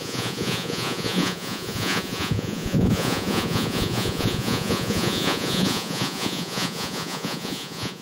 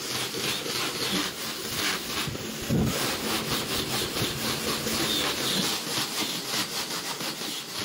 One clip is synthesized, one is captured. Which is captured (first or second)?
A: second